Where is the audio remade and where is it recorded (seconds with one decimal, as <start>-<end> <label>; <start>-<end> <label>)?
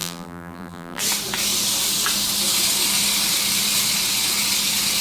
0.0-1.0 remade; 1.0-5.0 recorded